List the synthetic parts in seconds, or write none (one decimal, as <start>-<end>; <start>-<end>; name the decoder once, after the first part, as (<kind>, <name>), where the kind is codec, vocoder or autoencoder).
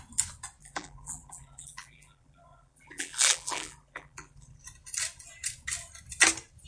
0.6-4.6 (vocoder, BigVGAN v2)